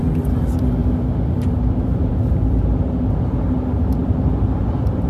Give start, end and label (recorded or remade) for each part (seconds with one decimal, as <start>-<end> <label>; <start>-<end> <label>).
0.0-4.0 recorded; 4.0-5.1 remade